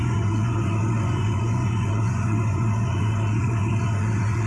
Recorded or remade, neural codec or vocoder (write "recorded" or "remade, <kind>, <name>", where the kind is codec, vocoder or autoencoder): remade, vocoder, Vocos